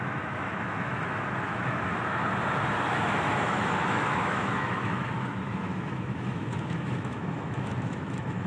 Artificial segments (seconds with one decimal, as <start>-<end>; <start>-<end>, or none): 0.0-2.2; 2.9-8.5